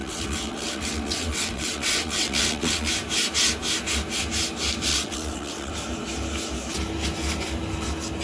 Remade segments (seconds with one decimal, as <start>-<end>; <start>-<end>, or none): 0.0-2.9; 4.9-5.7